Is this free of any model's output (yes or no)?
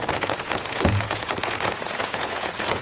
no